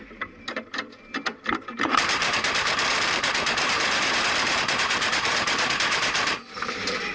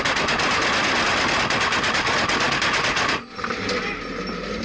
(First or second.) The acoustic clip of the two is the second